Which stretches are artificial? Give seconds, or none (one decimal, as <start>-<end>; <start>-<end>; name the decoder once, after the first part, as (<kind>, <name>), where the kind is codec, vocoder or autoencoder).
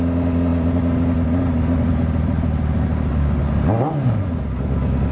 none